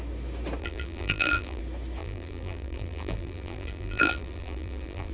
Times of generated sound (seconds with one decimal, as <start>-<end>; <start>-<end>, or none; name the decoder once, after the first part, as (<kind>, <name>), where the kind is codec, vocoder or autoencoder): 0.6-1.6 (vocoder, BigVGAN v2); 2.0-5.1